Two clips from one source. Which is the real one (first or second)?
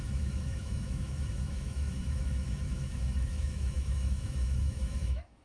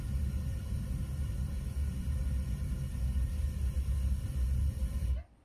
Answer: second